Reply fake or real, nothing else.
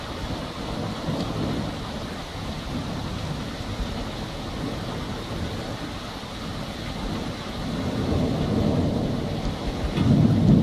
real